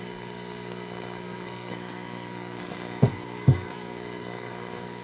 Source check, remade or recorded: remade